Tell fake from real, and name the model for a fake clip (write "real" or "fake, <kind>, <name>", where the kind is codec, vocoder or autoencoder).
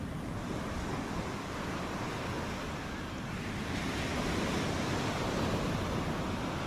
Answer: real